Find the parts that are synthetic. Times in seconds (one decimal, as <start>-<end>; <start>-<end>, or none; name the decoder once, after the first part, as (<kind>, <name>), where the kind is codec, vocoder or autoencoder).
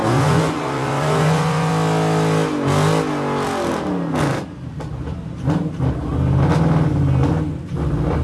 0.0-1.7 (vocoder, Vocos)